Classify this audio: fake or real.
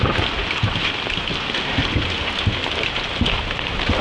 real